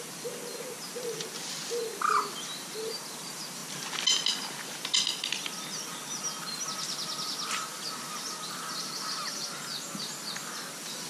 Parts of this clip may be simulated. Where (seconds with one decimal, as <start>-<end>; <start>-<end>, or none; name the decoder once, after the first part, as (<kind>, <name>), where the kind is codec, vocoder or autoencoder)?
none